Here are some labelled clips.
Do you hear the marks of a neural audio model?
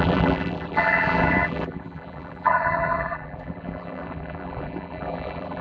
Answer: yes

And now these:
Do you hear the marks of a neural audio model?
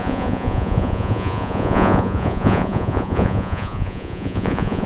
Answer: yes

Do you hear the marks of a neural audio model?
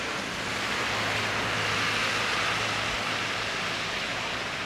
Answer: no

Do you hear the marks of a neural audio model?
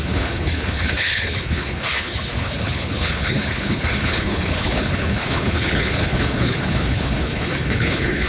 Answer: yes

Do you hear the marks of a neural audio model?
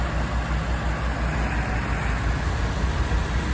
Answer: no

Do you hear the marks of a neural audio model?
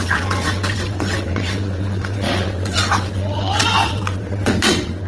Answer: yes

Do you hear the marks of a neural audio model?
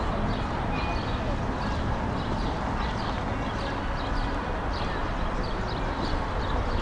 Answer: no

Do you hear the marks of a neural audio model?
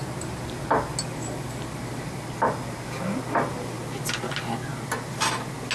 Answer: no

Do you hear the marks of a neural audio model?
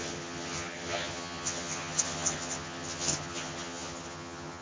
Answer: yes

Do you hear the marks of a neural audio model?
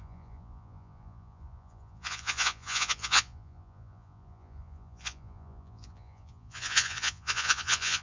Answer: yes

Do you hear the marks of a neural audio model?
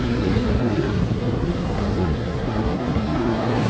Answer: yes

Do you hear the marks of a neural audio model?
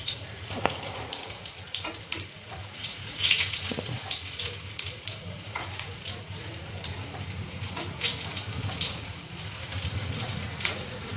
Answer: yes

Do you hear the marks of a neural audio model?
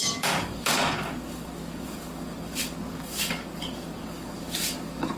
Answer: yes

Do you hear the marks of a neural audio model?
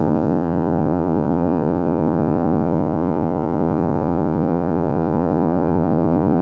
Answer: yes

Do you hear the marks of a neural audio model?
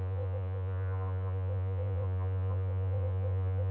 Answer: yes